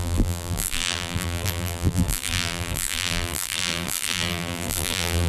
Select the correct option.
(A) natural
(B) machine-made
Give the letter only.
B